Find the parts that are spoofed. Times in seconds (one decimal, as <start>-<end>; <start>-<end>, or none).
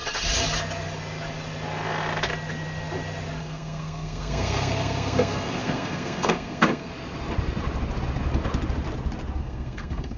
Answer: 3.4-6.9; 9.4-10.2